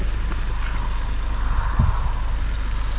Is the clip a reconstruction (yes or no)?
no